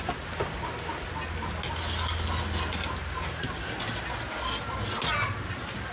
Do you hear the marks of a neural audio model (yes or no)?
no